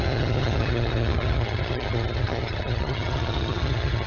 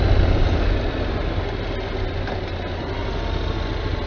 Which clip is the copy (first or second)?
first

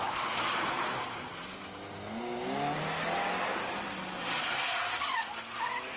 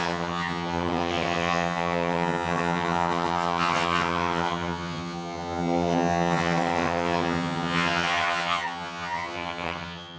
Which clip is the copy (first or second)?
second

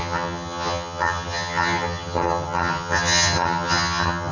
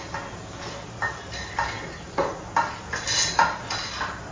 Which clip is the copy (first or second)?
first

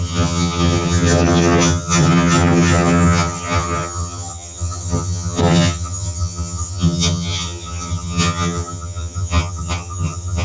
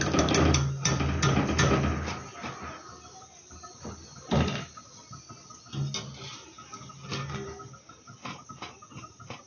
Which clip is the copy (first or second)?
first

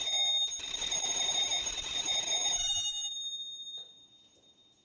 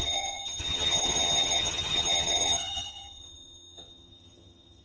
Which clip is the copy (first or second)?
second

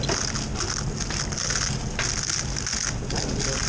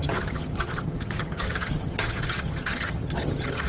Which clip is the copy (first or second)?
second